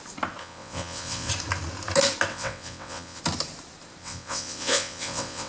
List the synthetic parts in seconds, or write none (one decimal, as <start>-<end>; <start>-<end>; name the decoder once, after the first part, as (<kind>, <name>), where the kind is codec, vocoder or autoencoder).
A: 0.4-1.3 (vocoder, WaveNeXt); 2.3-3.2; 4.0-5.5